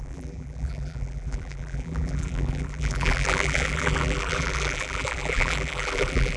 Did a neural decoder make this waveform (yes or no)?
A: yes